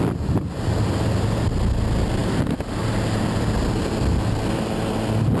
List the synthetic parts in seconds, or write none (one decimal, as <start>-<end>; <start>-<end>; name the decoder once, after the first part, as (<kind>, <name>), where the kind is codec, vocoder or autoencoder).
none